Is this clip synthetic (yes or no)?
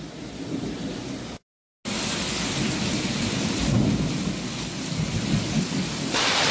no